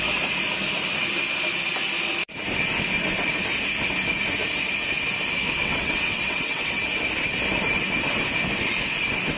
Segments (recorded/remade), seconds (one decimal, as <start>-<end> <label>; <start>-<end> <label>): 0.0-5.6 recorded; 5.6-6.7 remade; 6.7-9.4 recorded